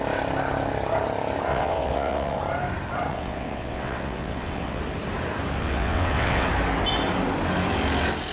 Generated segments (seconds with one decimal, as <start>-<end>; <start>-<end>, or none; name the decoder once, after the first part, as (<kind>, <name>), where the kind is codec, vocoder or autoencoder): 1.5-2.4 (vocoder, WaveNeXt); 3.1-4.8; 5.6-6.5